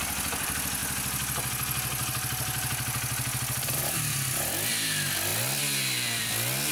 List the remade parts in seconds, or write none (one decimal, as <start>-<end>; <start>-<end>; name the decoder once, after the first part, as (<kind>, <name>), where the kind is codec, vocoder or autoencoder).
none